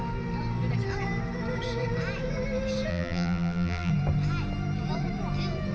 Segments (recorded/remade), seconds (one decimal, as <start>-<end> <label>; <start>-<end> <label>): 0.0-2.9 recorded; 2.9-3.9 remade; 3.9-5.7 recorded